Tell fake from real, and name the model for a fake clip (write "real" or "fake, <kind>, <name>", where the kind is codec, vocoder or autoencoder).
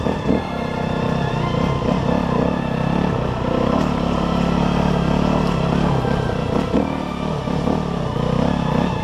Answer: real